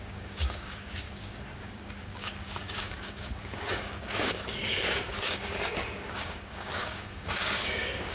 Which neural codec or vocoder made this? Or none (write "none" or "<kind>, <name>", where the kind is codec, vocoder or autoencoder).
codec, DAC